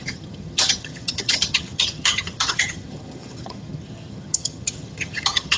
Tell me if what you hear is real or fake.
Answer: fake